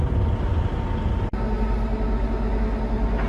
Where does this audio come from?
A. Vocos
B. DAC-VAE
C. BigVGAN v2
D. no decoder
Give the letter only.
D